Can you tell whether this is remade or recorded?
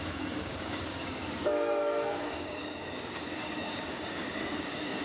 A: remade